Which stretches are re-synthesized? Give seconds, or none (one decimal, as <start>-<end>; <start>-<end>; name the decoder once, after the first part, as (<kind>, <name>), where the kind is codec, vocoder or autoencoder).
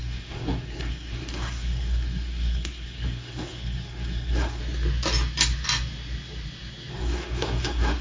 0.0-4.6 (codec, SNAC); 6.9-8.0